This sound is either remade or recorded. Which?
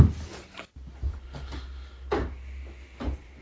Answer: recorded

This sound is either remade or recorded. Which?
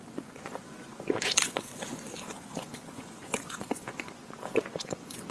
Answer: remade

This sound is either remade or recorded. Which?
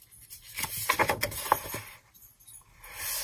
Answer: recorded